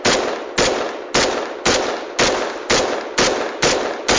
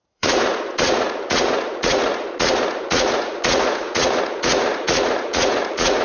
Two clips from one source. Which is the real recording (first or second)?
first